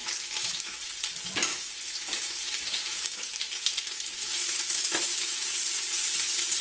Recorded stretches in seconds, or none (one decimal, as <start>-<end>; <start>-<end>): 0.9-1.5; 5.5-6.6